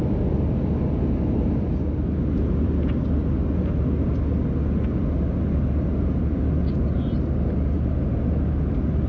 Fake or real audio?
real